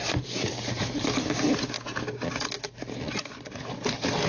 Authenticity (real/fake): real